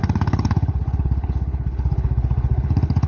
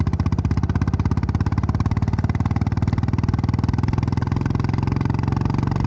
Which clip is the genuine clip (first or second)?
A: second